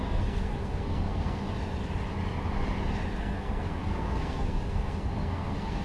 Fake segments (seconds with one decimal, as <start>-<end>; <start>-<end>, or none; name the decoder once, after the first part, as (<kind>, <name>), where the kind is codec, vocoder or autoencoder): 0.0-1.4 (codec, SNAC); 3.2-5.8